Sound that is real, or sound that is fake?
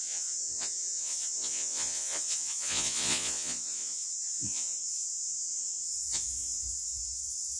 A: fake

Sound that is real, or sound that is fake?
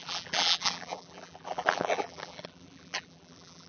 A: fake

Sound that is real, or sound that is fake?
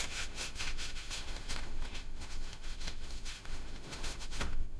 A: fake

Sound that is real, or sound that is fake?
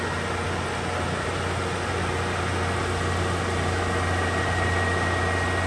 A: real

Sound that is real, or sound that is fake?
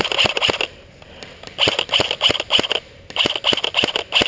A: real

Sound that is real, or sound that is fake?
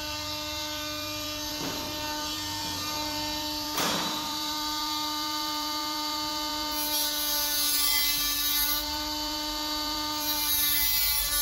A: fake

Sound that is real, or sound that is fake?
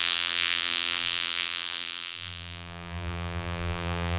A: fake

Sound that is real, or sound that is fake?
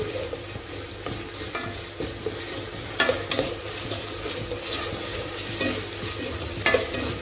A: real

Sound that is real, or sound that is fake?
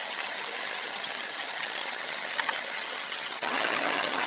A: fake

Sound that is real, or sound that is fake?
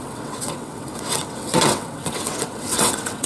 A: fake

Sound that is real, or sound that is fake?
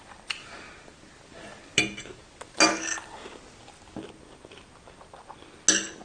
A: real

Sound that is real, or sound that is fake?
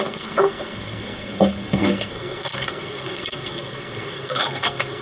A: fake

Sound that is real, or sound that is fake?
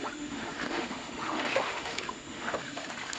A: fake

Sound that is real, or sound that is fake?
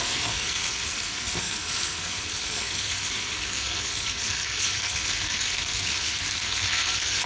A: fake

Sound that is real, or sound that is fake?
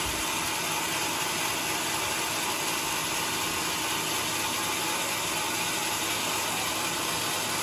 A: real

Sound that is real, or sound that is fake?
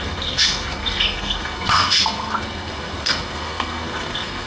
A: fake